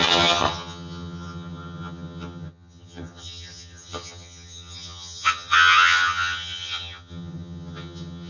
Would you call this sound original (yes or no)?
no